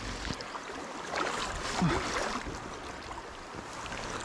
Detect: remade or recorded recorded